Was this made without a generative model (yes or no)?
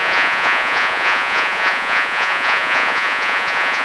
no